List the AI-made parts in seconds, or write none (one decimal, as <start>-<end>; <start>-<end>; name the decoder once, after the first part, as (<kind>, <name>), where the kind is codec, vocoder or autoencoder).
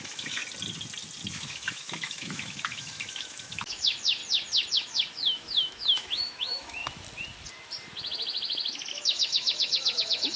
0.0-0.4 (autoencoder, DAC-VAE); 1.3-4.2; 4.7-6.8; 8.9-10.4